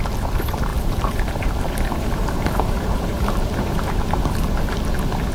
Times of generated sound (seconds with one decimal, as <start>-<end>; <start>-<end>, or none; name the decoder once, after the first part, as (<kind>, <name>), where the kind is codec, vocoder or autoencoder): 0.7-3.9 (vocoder, BigVGAN v2)